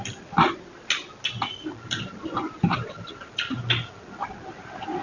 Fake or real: real